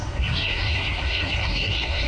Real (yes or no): no